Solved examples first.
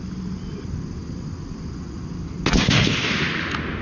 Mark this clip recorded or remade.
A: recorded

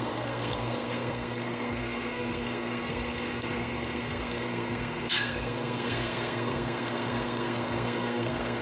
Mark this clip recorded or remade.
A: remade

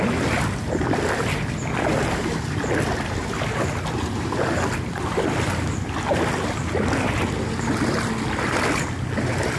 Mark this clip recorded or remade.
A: recorded